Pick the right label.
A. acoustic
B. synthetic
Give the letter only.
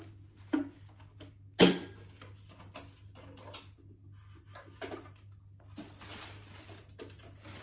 A